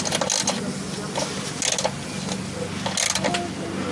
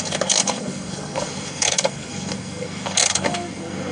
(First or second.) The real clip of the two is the first